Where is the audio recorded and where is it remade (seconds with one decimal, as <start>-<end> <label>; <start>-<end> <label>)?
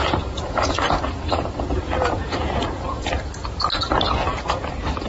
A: 0.0-3.1 remade; 3.1-5.1 recorded